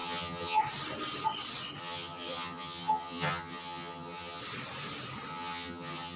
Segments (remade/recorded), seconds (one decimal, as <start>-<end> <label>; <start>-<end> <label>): 0.0-0.6 remade; 0.6-1.8 recorded; 1.8-4.4 remade; 4.4-5.3 recorded; 5.3-6.2 remade